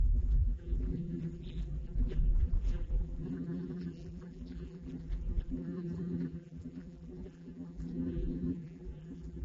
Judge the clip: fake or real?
fake